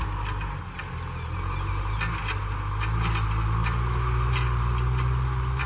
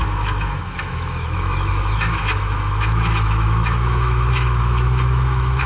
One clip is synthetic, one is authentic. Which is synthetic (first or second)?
second